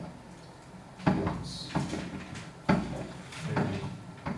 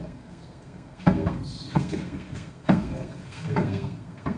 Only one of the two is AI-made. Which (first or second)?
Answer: second